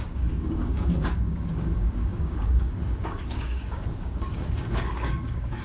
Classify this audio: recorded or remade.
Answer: remade